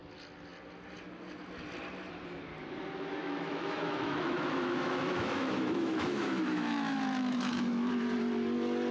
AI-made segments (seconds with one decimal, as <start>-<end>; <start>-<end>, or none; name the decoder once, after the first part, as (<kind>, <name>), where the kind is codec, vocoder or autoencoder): 3.2-7.9 (autoencoder, DAC-VAE)